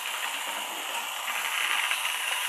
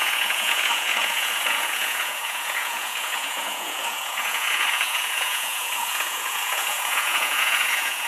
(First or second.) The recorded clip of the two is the first